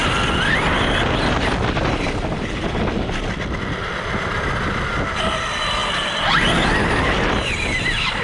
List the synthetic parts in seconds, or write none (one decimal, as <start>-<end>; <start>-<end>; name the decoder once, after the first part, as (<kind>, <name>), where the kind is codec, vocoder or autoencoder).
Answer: none